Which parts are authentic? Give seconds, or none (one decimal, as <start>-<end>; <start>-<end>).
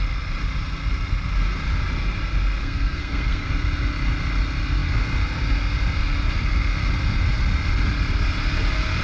0.0-2.6; 3.5-9.0